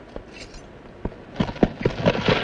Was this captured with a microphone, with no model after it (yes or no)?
yes